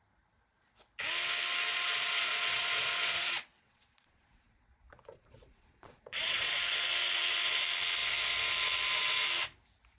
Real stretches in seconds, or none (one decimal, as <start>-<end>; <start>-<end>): 0.0-1.7; 6.6-10.0